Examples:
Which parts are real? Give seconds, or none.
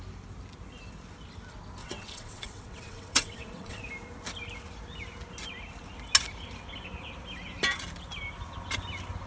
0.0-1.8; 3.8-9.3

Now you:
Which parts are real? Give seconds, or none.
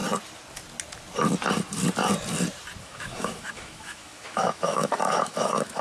0.0-2.8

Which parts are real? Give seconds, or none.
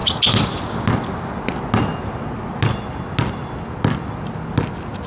0.0-5.1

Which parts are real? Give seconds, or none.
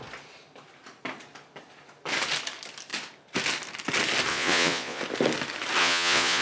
0.0-4.3; 5.0-5.8